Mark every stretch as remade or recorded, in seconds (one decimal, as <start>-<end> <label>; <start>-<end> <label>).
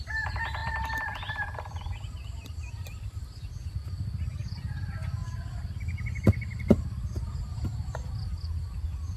0.0-0.6 recorded; 0.6-3.2 remade; 3.2-9.2 recorded